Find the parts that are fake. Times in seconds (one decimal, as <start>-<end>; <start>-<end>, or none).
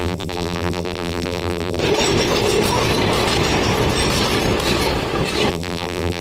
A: 0.0-1.8; 5.5-6.2